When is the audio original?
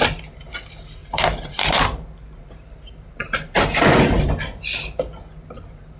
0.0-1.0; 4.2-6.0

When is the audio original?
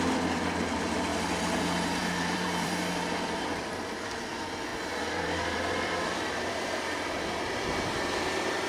0.0-2.0; 4.3-4.7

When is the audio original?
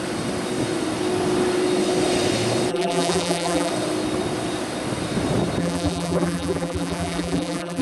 0.0-2.7; 3.7-5.6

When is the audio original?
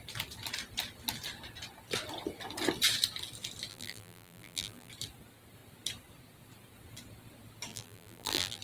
0.0-3.7; 4.9-7.7